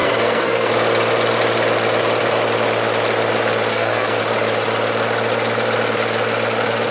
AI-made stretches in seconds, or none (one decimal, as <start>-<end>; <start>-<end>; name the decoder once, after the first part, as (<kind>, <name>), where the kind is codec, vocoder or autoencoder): 0.0-0.7 (codec, SNAC); 3.7-4.2